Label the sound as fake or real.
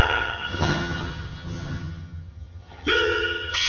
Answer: fake